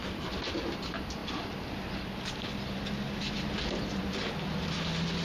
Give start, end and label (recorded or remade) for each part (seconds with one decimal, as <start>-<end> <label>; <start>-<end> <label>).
0.0-5.2 recorded